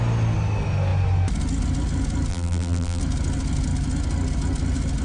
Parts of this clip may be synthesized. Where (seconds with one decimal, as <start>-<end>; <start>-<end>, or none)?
2.3-3.0